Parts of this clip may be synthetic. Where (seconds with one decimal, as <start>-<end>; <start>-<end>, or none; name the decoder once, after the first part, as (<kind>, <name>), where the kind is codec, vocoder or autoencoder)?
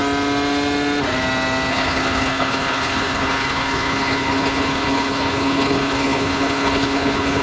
1.7-7.4 (codec, HILCodec)